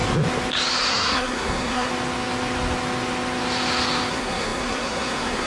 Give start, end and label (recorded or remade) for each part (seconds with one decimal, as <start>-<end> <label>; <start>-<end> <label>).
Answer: 0.0-0.9 recorded; 0.9-1.9 remade; 1.9-4.1 recorded; 4.1-5.5 remade